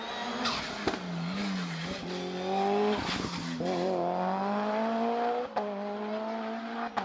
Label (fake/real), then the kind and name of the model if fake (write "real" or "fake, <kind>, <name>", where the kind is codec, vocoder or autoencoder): real